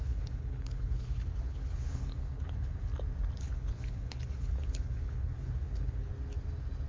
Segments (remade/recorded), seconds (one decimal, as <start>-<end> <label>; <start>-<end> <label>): 0.0-2.9 remade; 2.9-3.4 recorded; 3.4-6.1 remade; 6.1-6.9 recorded